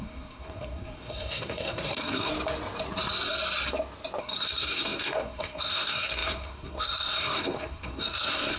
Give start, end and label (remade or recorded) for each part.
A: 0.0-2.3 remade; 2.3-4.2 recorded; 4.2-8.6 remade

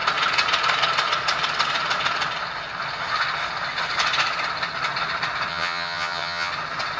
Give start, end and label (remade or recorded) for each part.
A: 0.0-5.5 recorded; 5.5-6.5 remade; 6.5-7.0 recorded

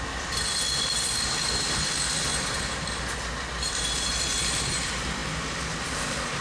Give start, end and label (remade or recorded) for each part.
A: 0.0-2.3 recorded; 2.3-3.0 remade; 3.0-3.5 recorded; 3.5-4.1 remade; 4.1-6.4 recorded

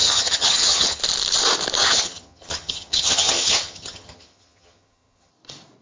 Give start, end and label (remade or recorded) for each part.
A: 0.0-1.0 remade; 1.0-1.8 recorded; 1.8-5.3 remade; 5.3-5.8 recorded

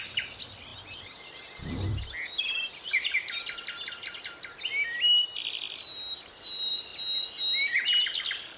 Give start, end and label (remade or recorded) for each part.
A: 0.0-8.6 recorded

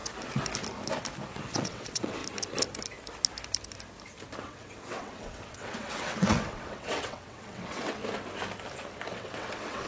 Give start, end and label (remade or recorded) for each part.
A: 0.0-1.4 recorded; 1.4-2.2 remade; 2.2-4.4 recorded; 4.4-8.0 remade; 8.0-9.1 recorded; 9.1-9.9 remade

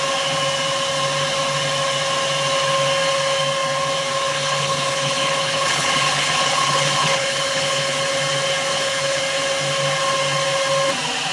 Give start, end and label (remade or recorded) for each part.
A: 0.0-4.3 recorded; 4.3-8.0 remade; 8.0-8.7 recorded; 8.7-9.2 remade; 9.2-11.3 recorded